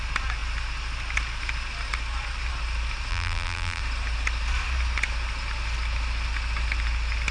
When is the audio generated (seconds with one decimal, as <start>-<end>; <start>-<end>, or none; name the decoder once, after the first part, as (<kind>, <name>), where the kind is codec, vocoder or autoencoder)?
3.1-3.8 (vocoder, BigVGAN v2)